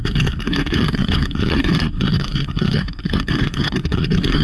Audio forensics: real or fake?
fake